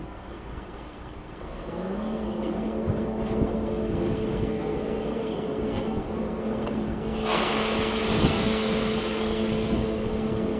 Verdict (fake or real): fake